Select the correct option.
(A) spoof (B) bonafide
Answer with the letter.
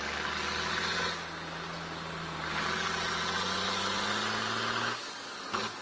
B